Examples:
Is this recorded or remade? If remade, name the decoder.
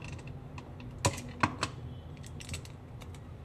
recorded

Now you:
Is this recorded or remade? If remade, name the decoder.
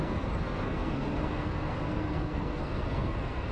remade, codec, SNAC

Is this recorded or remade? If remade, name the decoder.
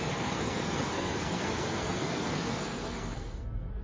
remade, codec, SNAC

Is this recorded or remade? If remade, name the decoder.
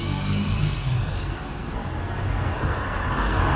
remade, codec, SNAC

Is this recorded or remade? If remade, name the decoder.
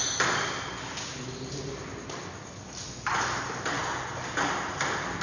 recorded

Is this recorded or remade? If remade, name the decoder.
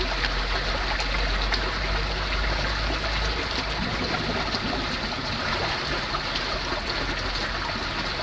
recorded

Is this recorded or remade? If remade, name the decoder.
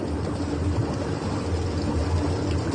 recorded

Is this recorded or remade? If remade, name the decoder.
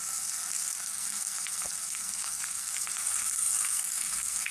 remade, codec, SNAC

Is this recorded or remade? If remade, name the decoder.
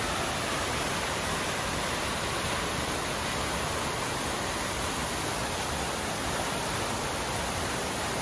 recorded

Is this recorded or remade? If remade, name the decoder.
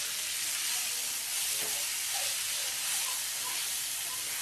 recorded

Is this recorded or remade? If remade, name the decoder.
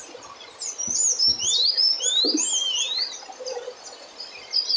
recorded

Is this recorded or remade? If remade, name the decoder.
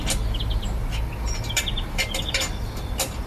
recorded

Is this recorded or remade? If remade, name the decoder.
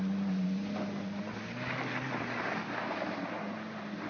recorded